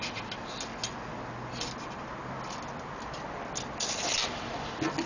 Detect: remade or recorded recorded